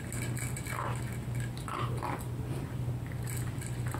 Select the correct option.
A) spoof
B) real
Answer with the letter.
B